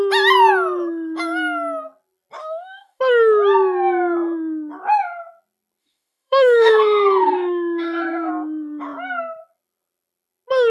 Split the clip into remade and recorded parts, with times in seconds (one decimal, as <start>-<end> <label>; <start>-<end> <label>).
0.0-2.4 recorded; 2.4-3.0 remade; 3.0-5.8 recorded; 5.8-8.3 remade; 8.3-10.7 recorded

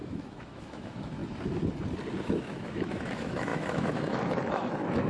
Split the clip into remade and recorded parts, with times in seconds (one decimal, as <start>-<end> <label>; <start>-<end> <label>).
0.0-1.2 remade; 1.2-2.2 recorded; 2.2-5.1 remade

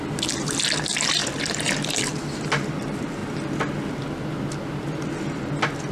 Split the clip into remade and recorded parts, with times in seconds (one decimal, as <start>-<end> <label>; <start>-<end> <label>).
0.0-5.9 recorded

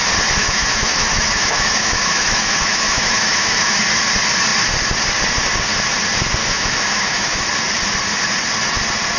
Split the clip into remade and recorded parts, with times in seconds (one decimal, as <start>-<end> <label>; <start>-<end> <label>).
0.0-0.4 recorded; 0.4-3.8 remade; 3.8-6.4 recorded; 6.4-7.4 remade; 7.4-9.2 recorded

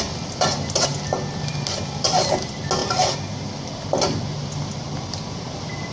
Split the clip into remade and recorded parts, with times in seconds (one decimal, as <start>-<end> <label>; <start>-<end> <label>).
0.0-5.9 recorded